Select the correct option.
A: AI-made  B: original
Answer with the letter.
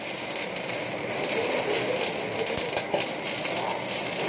A